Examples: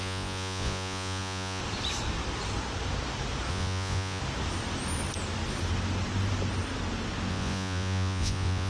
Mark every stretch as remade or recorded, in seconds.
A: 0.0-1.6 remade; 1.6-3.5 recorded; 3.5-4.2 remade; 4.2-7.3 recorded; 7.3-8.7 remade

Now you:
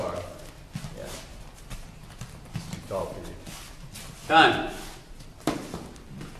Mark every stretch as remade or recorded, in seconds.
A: 0.0-6.4 recorded

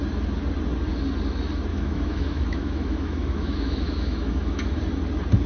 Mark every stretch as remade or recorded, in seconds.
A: 0.0-1.7 recorded; 1.7-4.8 remade; 4.8-5.5 recorded

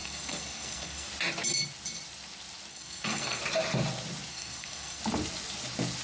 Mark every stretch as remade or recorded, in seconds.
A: 0.0-1.1 remade; 1.1-2.7 recorded; 2.7-3.4 remade; 3.4-4.3 recorded; 4.3-5.0 remade; 5.0-6.0 recorded

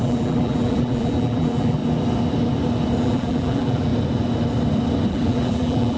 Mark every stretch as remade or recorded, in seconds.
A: 0.0-1.8 remade; 1.8-3.0 recorded; 3.0-3.9 remade; 3.9-5.1 recorded; 5.1-6.0 remade